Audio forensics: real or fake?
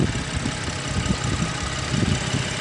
real